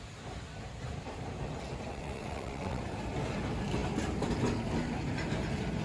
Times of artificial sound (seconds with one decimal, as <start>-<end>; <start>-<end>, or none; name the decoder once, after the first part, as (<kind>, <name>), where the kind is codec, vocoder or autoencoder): 1.9-2.8 (vocoder, WaveNeXt)